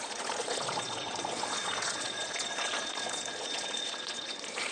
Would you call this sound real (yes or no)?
no